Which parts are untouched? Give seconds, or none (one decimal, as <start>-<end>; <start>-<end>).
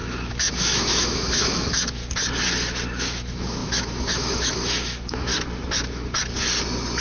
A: 2.0-3.0; 5.3-7.0